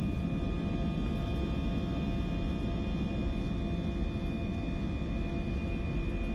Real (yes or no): yes